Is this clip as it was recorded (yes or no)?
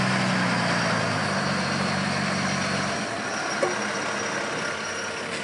yes